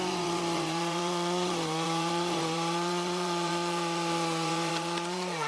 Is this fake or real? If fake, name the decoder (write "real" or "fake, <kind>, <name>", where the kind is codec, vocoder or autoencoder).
fake, vocoder, Vocos